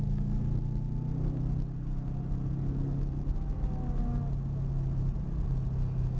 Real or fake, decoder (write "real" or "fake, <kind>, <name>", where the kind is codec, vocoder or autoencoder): real